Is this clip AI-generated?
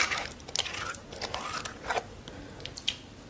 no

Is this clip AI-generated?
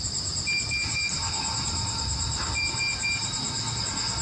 no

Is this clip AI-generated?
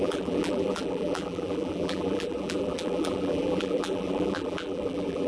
yes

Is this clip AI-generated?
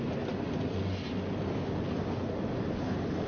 no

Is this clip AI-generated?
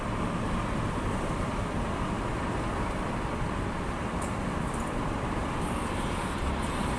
yes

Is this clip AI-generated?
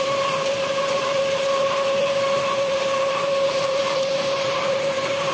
yes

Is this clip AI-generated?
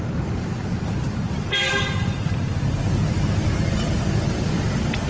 yes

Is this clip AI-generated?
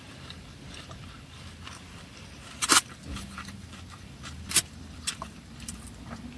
yes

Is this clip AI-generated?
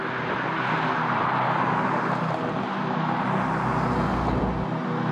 no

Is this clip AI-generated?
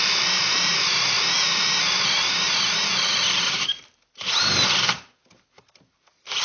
yes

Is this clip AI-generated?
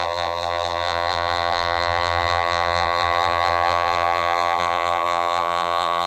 yes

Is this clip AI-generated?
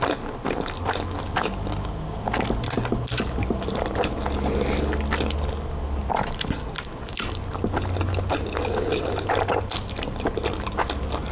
no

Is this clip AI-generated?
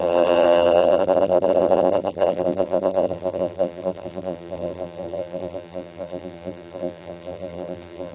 yes